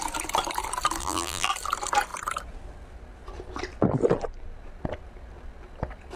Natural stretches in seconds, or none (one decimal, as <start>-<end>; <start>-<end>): 0.0-1.0; 1.5-6.2